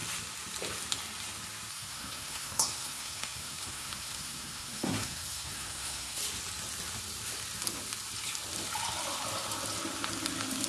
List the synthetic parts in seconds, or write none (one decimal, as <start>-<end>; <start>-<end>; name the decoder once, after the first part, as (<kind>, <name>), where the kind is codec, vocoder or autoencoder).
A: 1.7-6.2 (codec, SNAC)